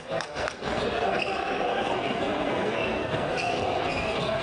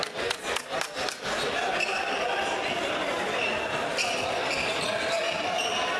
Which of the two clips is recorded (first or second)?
second